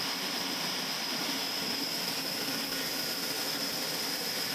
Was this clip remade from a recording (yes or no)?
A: no